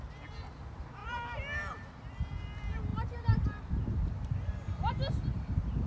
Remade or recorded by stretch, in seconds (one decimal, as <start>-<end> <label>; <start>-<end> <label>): 0.0-2.9 recorded; 2.9-5.0 remade; 5.0-5.9 recorded